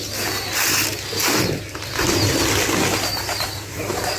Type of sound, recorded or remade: recorded